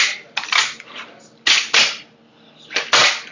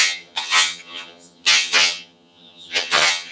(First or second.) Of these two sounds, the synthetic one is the second